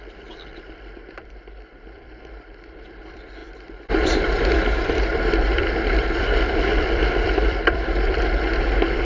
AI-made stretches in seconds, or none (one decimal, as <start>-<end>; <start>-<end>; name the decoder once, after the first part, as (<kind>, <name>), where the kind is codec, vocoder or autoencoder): 0.0-9.0 (vocoder, BigVGAN v2)